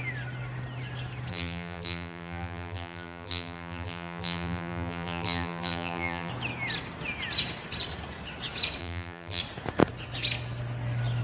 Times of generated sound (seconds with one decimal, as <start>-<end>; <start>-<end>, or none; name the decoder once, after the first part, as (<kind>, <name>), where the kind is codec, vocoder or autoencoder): 1.3-6.3 (vocoder, BigVGAN v2); 8.8-9.4